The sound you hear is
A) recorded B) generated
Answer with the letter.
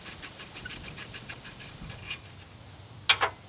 A